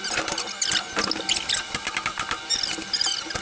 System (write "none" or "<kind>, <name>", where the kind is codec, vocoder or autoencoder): none